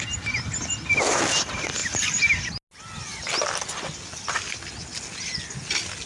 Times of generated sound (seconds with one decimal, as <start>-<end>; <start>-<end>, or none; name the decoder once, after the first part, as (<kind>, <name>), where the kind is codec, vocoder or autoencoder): none